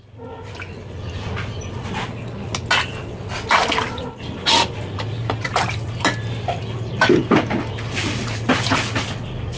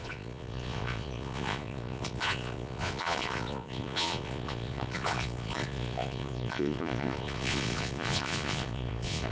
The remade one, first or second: second